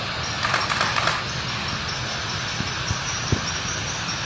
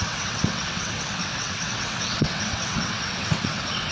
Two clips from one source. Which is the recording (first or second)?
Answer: first